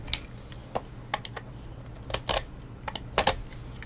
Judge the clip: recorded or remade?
recorded